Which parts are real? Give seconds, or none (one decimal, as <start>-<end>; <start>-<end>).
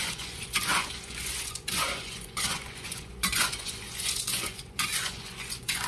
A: none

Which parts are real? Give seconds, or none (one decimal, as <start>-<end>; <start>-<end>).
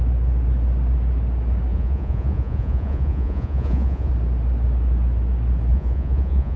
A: 0.0-1.7; 4.1-5.7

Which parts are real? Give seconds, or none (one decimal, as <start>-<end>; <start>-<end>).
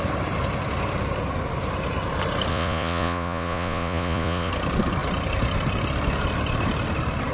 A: 0.0-2.5; 4.5-7.3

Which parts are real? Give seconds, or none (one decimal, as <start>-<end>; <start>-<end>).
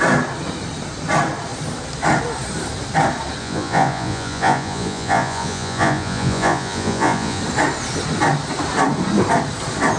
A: 0.0-3.4; 7.4-10.0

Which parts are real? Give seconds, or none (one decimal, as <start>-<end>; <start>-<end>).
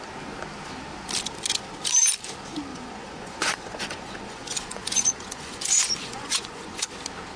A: 0.0-2.7; 6.9-7.4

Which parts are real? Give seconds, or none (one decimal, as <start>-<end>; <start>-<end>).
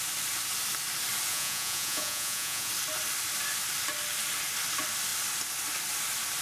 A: 0.0-1.3; 2.7-6.4